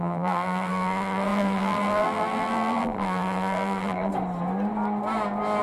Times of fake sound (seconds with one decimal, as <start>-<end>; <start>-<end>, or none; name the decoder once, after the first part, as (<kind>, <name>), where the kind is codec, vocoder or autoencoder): 0.0-4.1 (vocoder, BigVGAN v2)